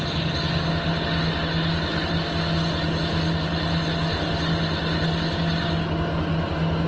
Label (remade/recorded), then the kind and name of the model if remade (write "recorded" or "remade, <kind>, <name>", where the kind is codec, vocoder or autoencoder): recorded